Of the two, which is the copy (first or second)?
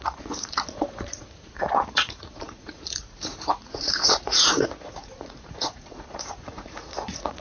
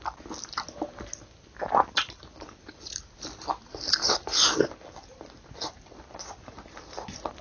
first